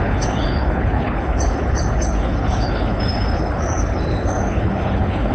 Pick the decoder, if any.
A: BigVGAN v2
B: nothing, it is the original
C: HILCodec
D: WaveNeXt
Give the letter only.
C